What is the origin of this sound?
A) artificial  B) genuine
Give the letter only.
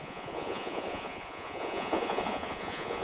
A